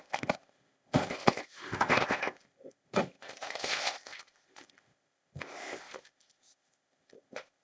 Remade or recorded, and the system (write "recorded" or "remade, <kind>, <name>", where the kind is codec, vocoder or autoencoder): remade, codec, ZipCodec